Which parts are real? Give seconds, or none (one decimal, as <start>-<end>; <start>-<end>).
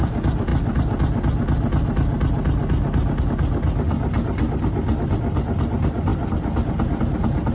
0.0-7.5